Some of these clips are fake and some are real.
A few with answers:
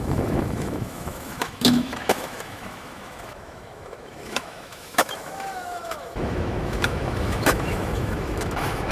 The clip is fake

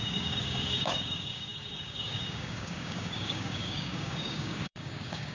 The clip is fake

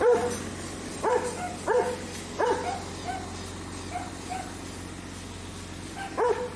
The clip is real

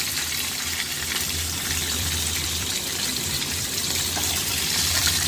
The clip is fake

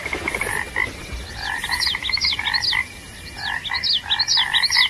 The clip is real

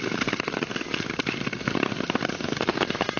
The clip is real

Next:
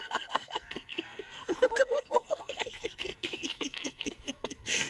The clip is fake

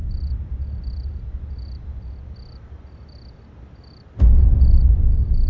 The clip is real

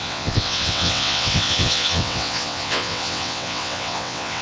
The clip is fake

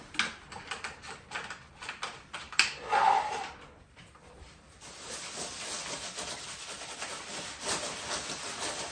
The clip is real